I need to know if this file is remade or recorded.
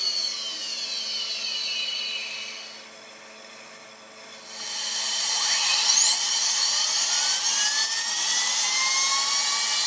recorded